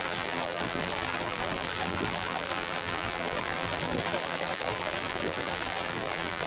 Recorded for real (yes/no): no